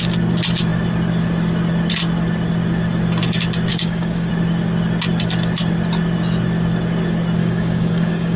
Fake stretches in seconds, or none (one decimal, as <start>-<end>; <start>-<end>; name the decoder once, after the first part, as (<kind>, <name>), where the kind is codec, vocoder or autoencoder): 3.7-4.3 (codec, DAC); 7.4-8.4